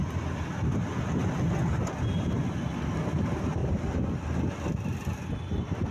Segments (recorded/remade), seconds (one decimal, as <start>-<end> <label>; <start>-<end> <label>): 0.0-5.9 recorded